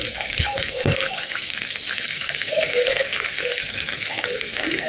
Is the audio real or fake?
fake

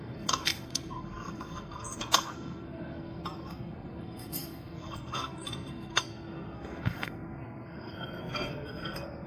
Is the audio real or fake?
fake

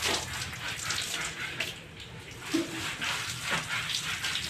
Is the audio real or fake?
real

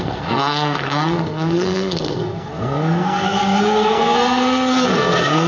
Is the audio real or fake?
fake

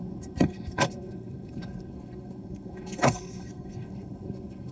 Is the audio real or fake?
fake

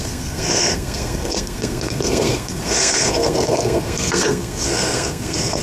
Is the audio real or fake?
fake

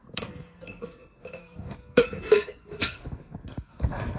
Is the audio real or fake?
fake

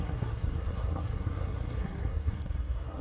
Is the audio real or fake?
fake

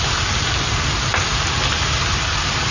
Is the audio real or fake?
real